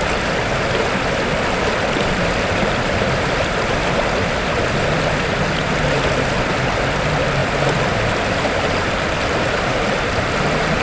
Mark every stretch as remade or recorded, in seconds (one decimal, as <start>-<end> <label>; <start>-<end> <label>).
0.0-10.8 recorded